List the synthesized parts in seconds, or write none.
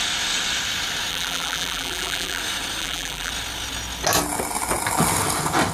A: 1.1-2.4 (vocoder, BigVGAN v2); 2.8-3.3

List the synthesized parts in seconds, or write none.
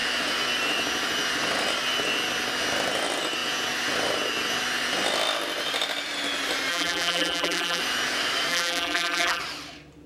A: 6.7-7.8 (vocoder, BigVGAN v2); 8.5-9.4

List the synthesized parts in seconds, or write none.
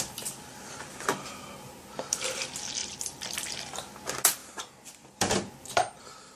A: 2.8-3.3 (vocoder, BigVGAN v2); 4.4-6.0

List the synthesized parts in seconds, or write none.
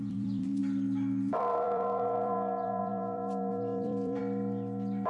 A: 0.0-0.6 (vocoder, BigVGAN v2); 1.3-4.2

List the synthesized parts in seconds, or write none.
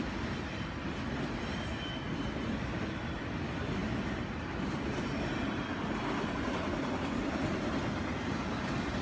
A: none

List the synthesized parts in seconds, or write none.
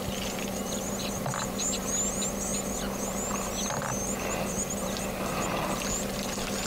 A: none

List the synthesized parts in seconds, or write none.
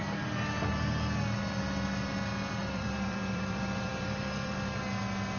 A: 2.6-4.5 (vocoder, BigVGAN v2)